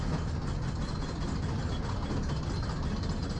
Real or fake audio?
real